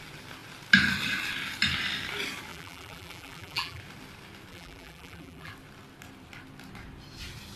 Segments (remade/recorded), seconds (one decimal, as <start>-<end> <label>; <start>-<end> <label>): 0.0-2.5 recorded; 2.5-3.8 remade; 3.8-4.5 recorded; 4.5-5.5 remade; 5.5-7.6 recorded